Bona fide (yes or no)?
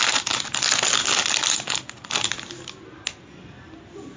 yes